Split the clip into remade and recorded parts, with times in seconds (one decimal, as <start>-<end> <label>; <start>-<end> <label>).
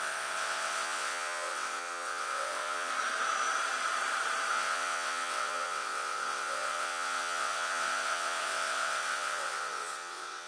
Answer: 0.0-2.9 remade; 2.9-4.5 recorded; 4.5-10.5 remade